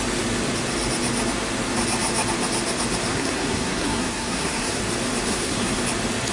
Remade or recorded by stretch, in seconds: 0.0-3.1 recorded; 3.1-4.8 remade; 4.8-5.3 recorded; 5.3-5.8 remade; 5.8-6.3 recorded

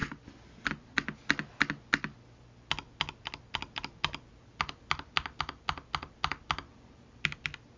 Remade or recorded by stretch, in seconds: 0.0-7.8 recorded

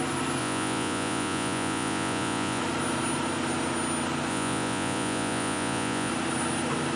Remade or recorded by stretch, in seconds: 0.0-0.4 recorded; 0.4-2.6 remade; 2.6-4.3 recorded; 4.3-6.1 remade; 6.1-7.0 recorded

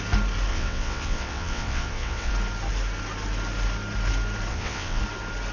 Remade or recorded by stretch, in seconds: 0.0-0.5 recorded; 0.5-2.3 remade; 2.3-4.5 recorded; 4.5-5.0 remade; 5.0-5.5 recorded

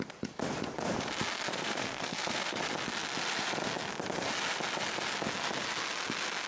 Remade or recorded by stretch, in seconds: 0.0-1.5 recorded; 1.5-2.6 remade; 2.6-6.5 recorded

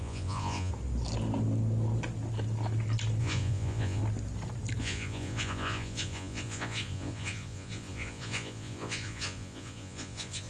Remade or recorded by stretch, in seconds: 0.0-0.7 remade; 0.7-3.2 recorded; 3.2-4.0 remade; 4.0-4.8 recorded; 4.8-10.5 remade